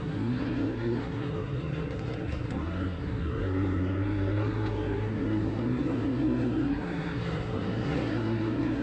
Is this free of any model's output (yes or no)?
no